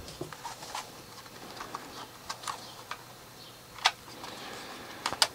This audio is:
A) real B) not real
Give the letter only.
A